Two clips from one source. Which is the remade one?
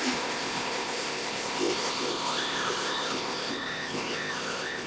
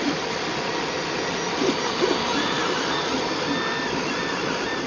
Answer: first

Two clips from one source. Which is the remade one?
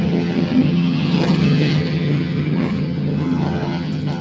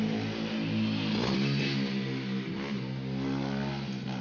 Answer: first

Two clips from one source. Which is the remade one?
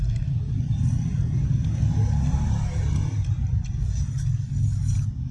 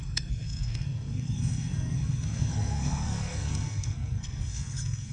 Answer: second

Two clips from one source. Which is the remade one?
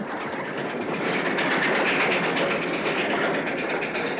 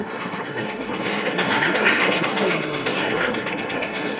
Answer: second